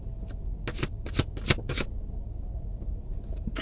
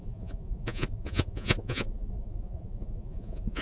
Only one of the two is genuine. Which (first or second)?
first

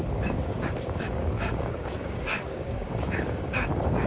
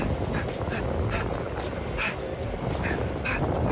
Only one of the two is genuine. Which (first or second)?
second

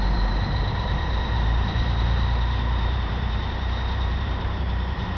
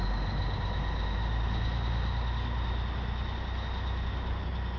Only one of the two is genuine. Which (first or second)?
second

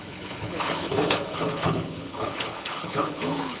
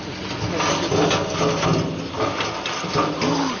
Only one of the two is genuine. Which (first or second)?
second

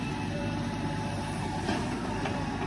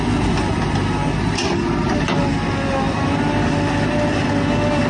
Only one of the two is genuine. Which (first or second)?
second